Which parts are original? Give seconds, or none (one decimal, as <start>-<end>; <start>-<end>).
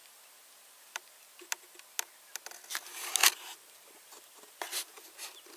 1.0-3.2